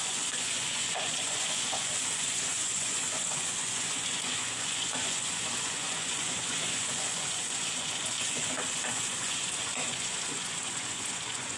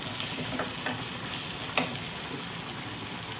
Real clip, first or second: second